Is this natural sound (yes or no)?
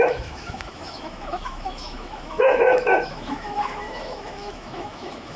no